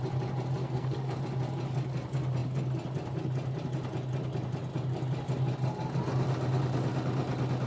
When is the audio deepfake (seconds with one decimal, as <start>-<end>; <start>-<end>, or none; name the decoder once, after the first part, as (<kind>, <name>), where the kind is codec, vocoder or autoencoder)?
0.6-1.2 (codec, SNAC)